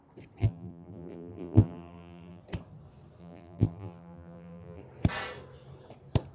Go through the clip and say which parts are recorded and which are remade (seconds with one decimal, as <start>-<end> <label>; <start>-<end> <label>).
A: 0.0-0.4 recorded; 0.4-2.4 remade; 2.4-3.2 recorded; 3.2-4.8 remade; 4.8-6.3 recorded